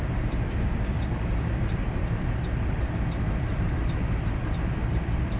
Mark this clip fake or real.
fake